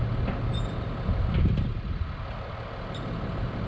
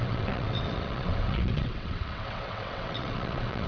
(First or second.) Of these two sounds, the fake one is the second